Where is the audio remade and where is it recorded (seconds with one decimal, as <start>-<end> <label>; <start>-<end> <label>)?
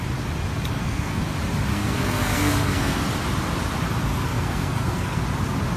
0.0-0.7 recorded; 0.7-1.2 remade; 1.2-1.7 recorded; 1.7-3.0 remade; 3.0-4.1 recorded; 4.1-5.2 remade; 5.2-5.8 recorded